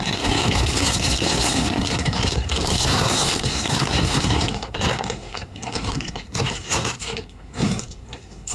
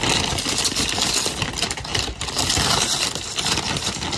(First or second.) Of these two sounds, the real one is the second